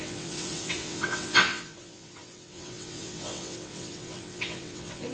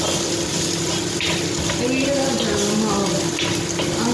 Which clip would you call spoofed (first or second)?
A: first